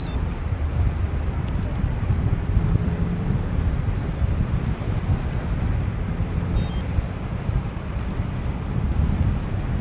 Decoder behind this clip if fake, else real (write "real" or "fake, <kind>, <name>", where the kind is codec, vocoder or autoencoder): fake, vocoder, BigVGAN v2